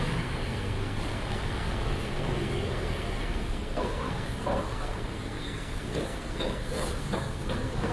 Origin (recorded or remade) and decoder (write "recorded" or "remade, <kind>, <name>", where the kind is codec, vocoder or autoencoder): remade, codec, SNAC